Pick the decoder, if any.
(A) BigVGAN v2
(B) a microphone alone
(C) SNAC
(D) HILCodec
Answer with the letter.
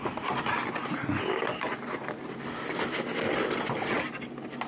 B